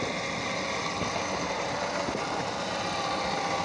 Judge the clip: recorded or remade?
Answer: recorded